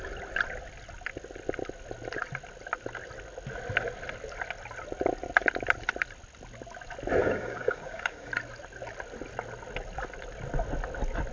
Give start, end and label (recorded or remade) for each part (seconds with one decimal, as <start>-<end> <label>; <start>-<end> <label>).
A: 0.0-7.2 recorded; 7.2-8.3 remade; 8.3-11.3 recorded